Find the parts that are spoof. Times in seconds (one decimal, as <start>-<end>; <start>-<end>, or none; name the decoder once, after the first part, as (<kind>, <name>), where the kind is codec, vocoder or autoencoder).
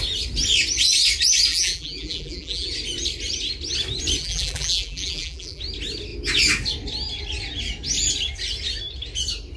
1.5-2.7 (vocoder, BigVGAN v2); 4.2-5.6